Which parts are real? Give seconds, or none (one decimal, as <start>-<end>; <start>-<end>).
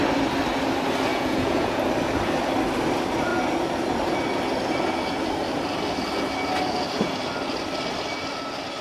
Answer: 0.0-1.1; 1.8-8.8